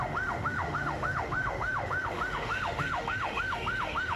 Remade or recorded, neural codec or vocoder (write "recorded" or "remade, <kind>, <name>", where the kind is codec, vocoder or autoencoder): remade, autoencoder, DAC-VAE